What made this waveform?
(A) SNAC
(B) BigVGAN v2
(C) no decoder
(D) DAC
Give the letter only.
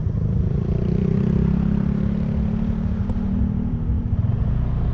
B